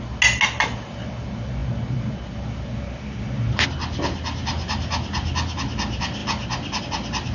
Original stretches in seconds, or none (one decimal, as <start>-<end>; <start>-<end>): 0.0-7.3